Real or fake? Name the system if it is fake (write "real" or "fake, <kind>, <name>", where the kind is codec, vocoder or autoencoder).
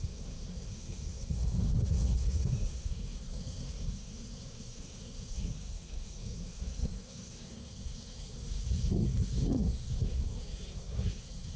fake, codec, SNAC